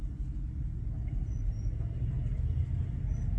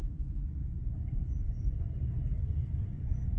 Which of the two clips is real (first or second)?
first